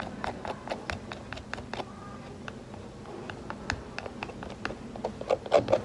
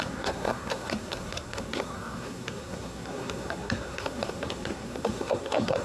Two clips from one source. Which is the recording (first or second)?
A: first